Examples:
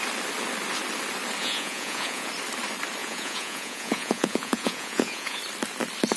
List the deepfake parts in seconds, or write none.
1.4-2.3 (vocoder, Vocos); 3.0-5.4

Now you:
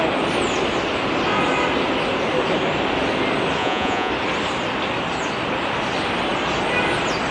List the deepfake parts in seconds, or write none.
3.6-4.1 (vocoder, Vocos)